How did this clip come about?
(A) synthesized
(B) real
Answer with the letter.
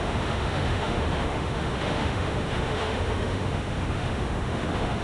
A